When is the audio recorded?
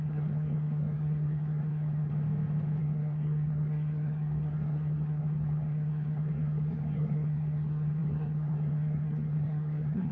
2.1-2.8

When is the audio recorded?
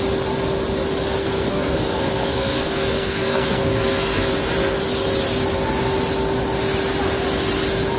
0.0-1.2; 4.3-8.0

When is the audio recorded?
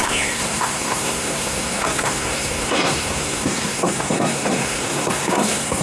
none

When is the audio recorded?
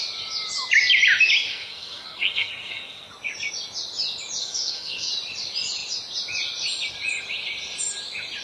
0.0-1.5; 3.1-4.4; 5.1-8.4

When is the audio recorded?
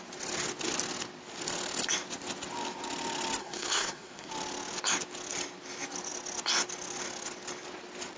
0.0-3.4; 4.3-8.2